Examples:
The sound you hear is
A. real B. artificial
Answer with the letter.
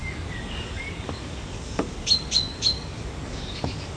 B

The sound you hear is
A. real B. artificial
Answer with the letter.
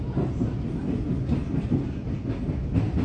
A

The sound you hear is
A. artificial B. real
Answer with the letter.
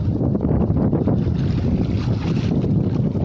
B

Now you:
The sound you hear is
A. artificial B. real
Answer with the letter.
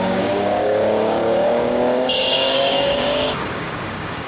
A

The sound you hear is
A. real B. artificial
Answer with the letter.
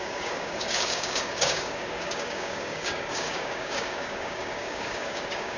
B